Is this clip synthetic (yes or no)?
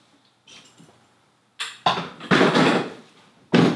no